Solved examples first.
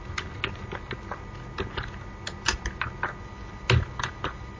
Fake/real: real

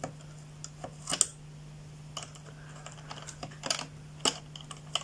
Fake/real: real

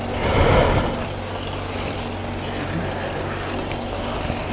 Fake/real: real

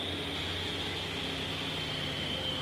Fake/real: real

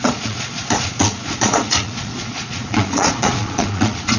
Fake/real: fake